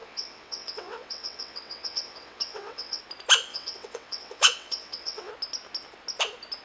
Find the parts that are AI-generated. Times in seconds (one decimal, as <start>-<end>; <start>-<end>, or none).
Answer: 0.0-3.0; 3.5-5.3